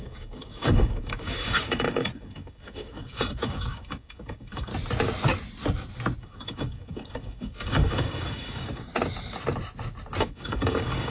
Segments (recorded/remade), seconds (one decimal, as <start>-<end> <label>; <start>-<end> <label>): 0.0-4.7 remade; 4.7-6.2 recorded; 6.2-8.9 remade; 8.9-10.2 recorded; 10.2-11.1 remade